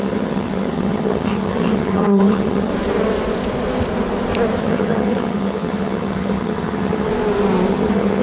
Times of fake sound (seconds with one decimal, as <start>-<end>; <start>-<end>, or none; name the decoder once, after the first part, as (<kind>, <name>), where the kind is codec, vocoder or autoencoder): 0.0-2.7 (vocoder, HiFi-GAN); 4.6-7.1; 7.7-8.2